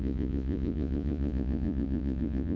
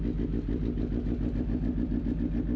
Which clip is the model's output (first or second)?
first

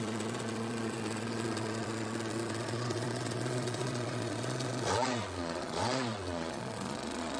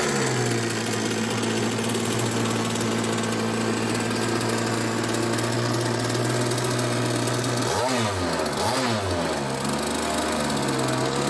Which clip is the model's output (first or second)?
first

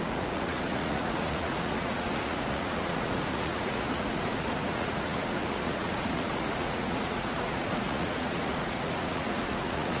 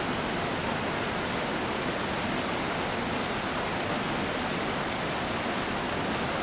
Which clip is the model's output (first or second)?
first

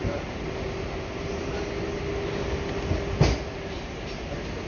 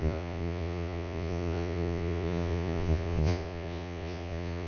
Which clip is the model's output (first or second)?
second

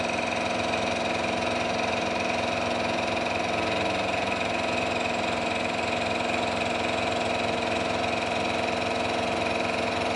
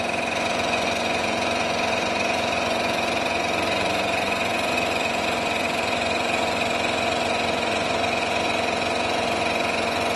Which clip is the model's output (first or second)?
second